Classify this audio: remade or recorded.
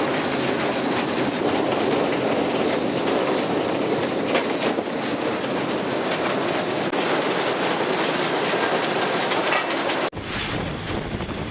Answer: recorded